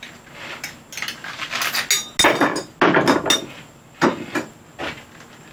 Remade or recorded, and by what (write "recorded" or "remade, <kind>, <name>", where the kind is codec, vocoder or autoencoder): recorded